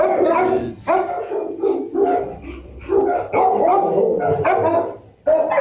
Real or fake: real